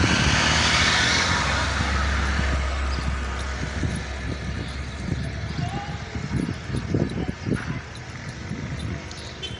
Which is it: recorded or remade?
recorded